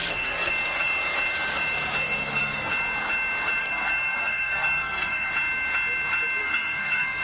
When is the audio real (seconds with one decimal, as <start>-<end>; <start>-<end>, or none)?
0.5-2.0; 2.7-3.6; 5.3-6.4